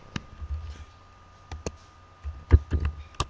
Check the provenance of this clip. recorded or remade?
recorded